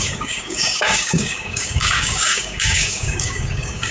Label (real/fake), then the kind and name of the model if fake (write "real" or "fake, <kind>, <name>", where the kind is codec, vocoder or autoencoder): fake, codec, DAC